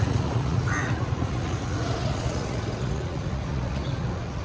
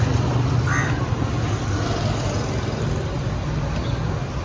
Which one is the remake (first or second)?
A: first